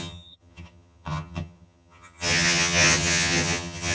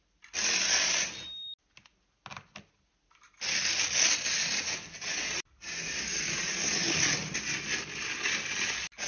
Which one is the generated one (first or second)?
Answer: first